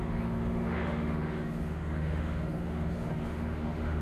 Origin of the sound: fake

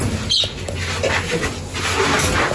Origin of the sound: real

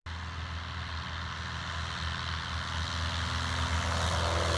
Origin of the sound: real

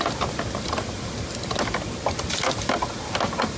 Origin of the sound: real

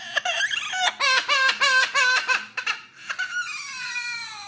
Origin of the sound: real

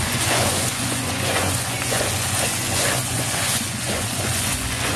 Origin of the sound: fake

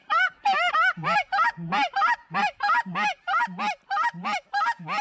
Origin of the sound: real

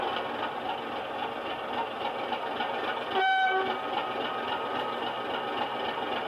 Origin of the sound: fake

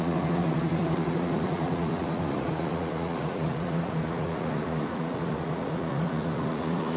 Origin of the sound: fake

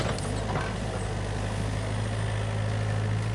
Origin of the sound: real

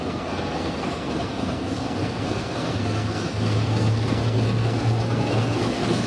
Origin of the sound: fake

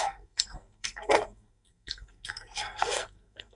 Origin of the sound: fake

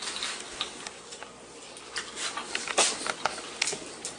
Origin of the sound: real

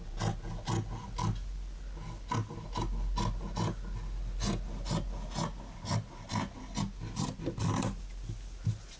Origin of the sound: real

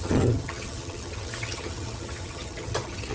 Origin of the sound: fake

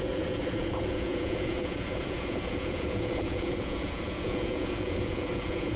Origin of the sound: fake